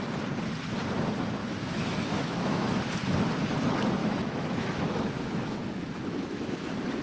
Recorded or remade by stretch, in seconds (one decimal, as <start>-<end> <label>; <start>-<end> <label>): 0.0-1.4 recorded; 1.4-2.8 remade; 2.8-4.0 recorded; 4.0-7.0 remade